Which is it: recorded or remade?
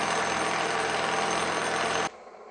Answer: recorded